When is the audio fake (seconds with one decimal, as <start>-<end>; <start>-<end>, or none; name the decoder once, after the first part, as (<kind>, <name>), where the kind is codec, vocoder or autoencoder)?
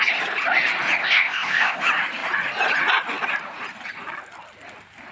1.0-1.8 (codec, ZipCodec)